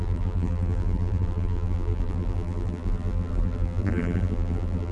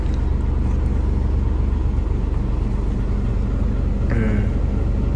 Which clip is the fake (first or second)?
first